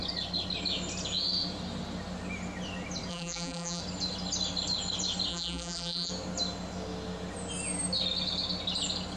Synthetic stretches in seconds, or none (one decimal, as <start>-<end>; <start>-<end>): 3.1-3.8; 5.3-6.1